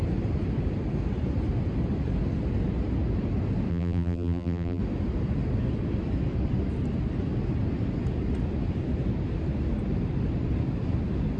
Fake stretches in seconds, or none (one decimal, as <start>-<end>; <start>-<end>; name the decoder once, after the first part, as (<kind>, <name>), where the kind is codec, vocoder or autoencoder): 3.7-4.8 (vocoder, BigVGAN v2)